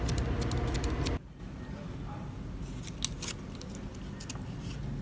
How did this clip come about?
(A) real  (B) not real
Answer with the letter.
A